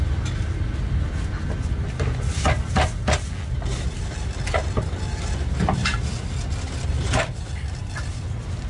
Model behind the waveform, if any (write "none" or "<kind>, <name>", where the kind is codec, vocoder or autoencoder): none